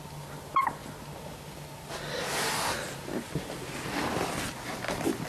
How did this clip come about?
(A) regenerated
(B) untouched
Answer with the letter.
B